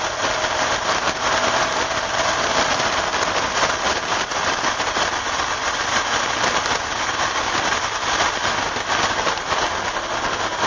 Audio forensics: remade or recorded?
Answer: recorded